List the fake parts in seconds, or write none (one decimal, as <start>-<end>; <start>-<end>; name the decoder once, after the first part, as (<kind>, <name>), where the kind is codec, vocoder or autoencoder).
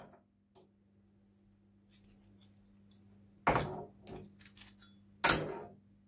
none